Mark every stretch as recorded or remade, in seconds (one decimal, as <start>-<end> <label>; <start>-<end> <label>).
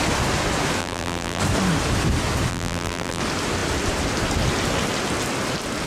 0.0-0.8 recorded; 0.8-1.4 remade; 1.4-2.5 recorded; 2.5-3.2 remade; 3.2-5.9 recorded